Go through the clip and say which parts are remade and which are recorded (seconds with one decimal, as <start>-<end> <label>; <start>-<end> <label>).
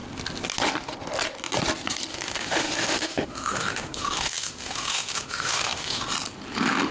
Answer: 0.0-2.1 recorded; 2.1-6.0 remade; 6.0-6.9 recorded